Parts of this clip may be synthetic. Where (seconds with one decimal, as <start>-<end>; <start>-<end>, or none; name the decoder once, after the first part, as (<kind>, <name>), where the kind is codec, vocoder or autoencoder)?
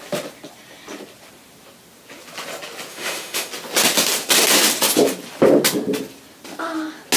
2.9-3.5 (autoencoder, DAC-VAE)